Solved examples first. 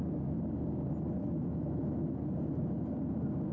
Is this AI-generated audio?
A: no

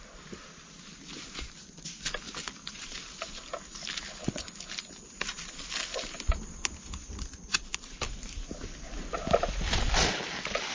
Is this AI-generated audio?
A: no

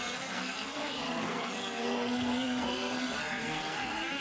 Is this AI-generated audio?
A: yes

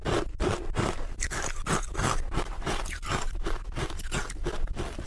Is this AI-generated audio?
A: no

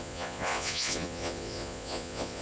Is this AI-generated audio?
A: yes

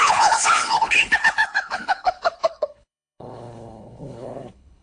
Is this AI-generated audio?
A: yes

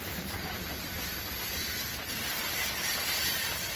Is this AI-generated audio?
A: no